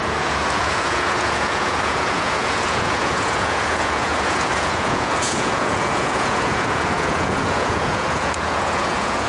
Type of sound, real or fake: fake